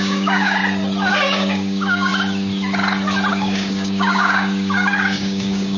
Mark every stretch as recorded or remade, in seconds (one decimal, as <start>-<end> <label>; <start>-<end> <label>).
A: 0.0-0.6 remade; 0.6-1.1 recorded; 1.1-2.1 remade; 2.1-3.3 recorded; 3.3-5.8 remade